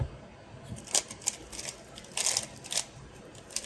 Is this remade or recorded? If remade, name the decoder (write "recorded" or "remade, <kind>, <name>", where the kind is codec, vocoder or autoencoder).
recorded